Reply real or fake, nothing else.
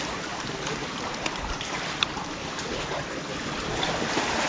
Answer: real